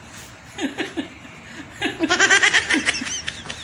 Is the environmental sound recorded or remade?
recorded